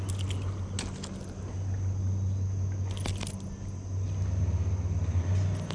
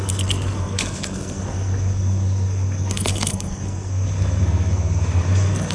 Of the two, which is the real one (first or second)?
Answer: first